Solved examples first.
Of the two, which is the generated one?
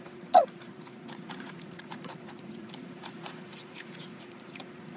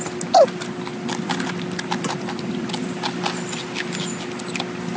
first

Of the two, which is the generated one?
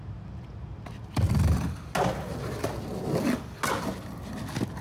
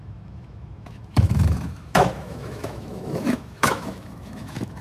second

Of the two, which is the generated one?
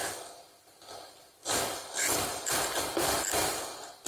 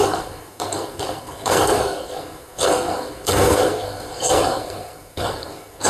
second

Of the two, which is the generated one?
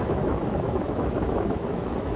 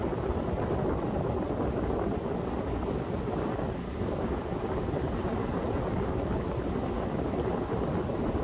first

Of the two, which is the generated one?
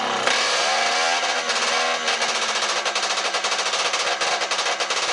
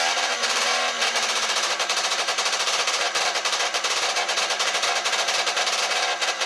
second